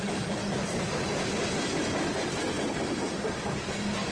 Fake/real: real